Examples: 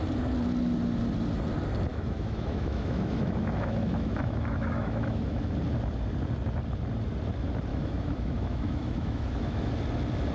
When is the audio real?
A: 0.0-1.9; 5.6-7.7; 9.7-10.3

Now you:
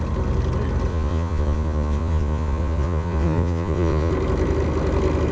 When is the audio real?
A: 0.0-0.9; 4.1-5.3

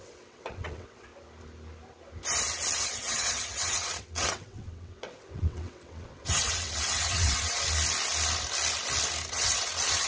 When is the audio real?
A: 1.1-2.8; 7.6-9.3

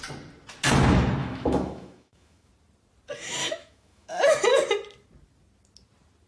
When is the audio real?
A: 0.0-1.2; 2.5-3.4; 4.2-6.3